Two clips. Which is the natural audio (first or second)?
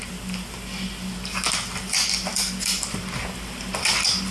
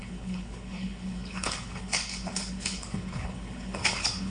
first